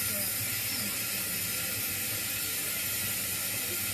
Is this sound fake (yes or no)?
no